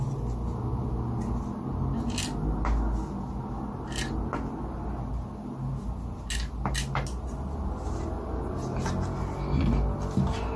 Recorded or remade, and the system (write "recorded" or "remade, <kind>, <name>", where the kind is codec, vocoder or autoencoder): recorded